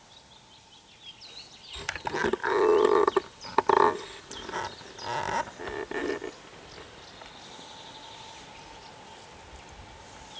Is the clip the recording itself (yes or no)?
yes